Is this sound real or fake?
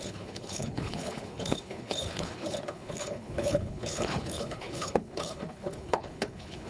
fake